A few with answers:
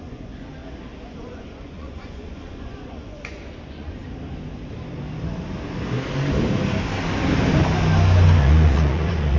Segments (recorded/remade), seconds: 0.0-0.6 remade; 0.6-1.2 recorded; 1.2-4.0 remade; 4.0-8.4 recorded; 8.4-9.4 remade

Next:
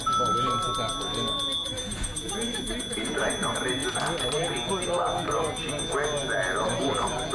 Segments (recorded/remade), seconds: 0.0-1.6 recorded; 1.6-3.3 remade; 3.3-7.3 recorded

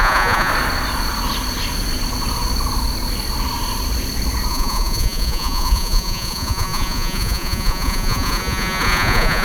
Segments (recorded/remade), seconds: 0.0-0.5 remade; 0.5-4.5 recorded; 4.5-9.4 remade

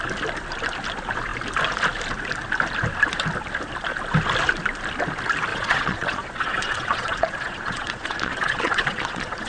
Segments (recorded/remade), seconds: 0.0-5.5 recorded; 5.5-9.5 remade

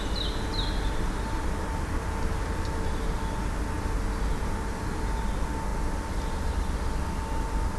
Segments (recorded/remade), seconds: 0.0-7.8 recorded

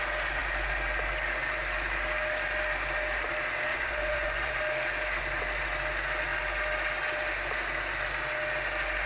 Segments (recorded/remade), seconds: 0.0-3.7 recorded; 3.7-4.6 remade; 4.6-9.1 recorded

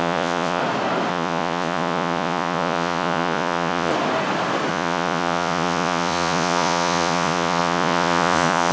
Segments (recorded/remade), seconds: 0.0-0.6 remade; 0.6-1.1 recorded; 1.1-3.9 remade; 3.9-4.7 recorded; 4.7-8.7 remade